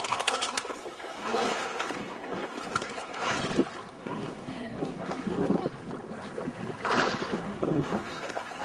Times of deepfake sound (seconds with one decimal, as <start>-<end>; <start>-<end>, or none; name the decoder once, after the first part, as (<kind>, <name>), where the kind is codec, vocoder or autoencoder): 0.0-3.4 (codec, SNAC); 3.9-5.6; 7.2-8.6

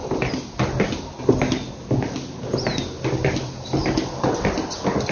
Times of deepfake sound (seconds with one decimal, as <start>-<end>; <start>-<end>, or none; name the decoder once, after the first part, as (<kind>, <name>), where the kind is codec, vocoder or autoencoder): none

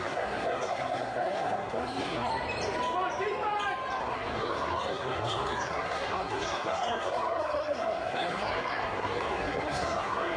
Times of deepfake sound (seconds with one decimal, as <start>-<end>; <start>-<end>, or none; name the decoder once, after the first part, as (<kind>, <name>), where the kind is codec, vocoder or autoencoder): 0.0-2.3 (codec, SNAC); 4.0-10.4

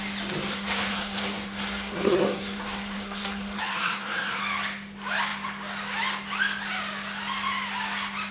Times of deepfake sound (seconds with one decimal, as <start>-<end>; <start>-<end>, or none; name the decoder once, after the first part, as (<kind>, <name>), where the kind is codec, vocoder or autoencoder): 0.5-4.4 (codec, SNAC)

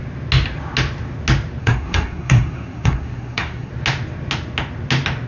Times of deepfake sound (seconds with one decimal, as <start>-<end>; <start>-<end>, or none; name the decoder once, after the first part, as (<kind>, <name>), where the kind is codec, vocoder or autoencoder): 1.6-3.7 (codec, SNAC)

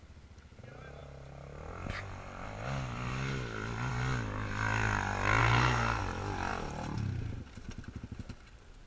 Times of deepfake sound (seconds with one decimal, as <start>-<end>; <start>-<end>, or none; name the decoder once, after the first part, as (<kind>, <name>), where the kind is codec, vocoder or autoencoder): 5.4-6.0 (codec, SNAC)